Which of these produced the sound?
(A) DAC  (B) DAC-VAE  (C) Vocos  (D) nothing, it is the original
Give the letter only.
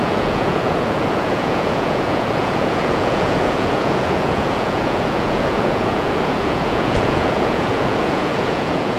C